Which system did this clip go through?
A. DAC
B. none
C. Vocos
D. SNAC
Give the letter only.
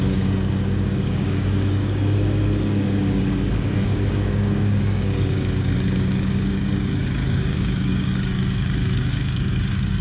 A